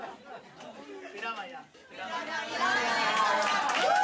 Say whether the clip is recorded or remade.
recorded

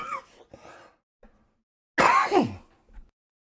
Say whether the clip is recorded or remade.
recorded